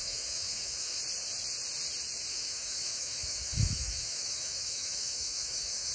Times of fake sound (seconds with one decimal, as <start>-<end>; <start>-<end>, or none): 0.0-1.0; 2.3-5.9